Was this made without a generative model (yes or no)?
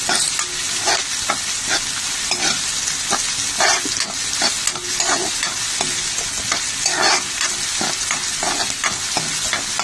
yes